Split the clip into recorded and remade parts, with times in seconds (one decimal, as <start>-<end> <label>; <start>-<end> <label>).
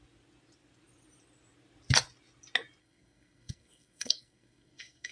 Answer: 0.0-2.8 recorded; 2.8-5.1 remade